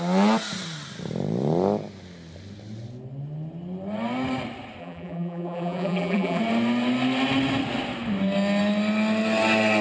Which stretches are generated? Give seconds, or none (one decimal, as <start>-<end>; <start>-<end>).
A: 4.8-6.4

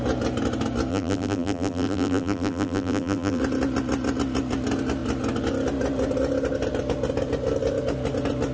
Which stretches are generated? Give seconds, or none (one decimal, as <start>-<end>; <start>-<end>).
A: 0.9-3.4

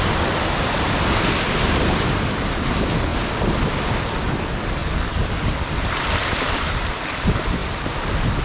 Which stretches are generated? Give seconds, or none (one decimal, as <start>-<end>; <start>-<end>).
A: none

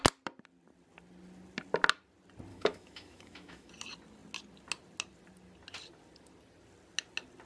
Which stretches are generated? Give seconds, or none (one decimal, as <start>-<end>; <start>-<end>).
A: 2.5-3.7

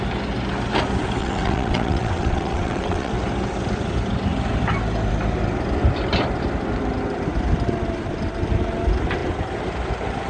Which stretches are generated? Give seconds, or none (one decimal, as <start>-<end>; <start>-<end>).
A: 1.2-3.1

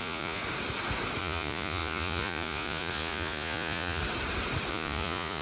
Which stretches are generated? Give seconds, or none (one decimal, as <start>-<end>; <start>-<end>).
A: 0.0-0.4; 1.2-4.0; 4.7-5.4

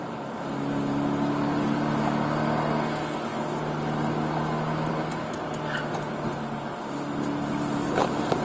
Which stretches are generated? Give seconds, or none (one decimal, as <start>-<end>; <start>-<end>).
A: none

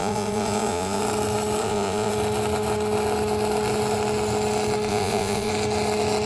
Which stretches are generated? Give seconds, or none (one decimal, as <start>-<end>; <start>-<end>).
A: 0.0-1.0; 1.6-2.1; 4.9-5.5